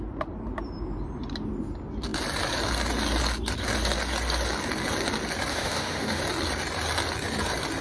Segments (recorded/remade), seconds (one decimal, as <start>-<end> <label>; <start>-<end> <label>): 0.0-5.5 recorded; 5.5-6.2 remade; 6.2-7.8 recorded